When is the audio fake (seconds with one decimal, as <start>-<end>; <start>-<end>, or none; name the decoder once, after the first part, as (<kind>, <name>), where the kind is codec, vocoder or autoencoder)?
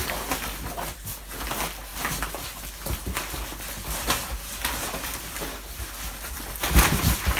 none